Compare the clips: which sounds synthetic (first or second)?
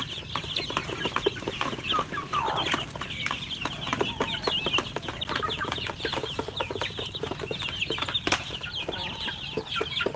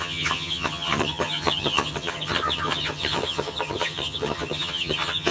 second